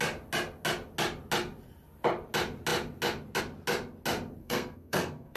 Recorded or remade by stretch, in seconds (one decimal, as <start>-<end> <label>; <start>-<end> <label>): 0.0-4.4 recorded; 4.4-5.4 remade